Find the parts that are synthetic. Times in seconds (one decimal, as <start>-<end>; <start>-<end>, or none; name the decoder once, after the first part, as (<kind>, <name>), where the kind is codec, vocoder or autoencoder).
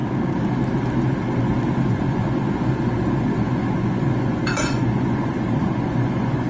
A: 1.8-6.5 (vocoder, Vocos)